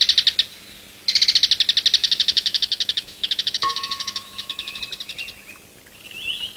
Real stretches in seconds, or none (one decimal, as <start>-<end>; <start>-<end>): 0.0-2.0; 4.8-6.6